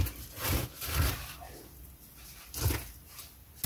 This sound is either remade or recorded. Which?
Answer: recorded